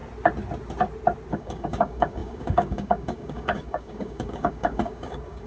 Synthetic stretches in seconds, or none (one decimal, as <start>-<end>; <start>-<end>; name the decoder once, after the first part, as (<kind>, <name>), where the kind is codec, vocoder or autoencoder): 1.3-5.5 (codec, DAC)